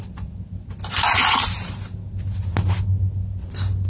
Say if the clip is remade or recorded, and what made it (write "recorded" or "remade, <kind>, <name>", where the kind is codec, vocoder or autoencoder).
recorded